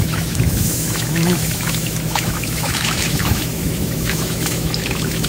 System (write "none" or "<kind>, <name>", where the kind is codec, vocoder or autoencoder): autoencoder, DAC-VAE